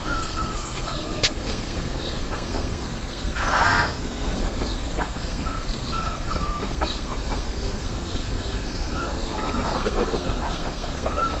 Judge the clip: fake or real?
fake